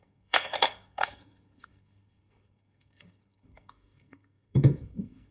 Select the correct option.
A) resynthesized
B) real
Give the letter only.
A